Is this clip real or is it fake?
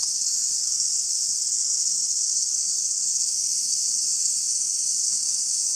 fake